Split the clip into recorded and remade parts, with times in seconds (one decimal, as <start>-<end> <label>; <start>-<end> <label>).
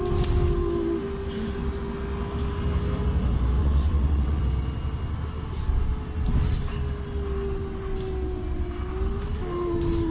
0.0-3.6 recorded; 3.6-4.4 remade; 4.4-10.1 recorded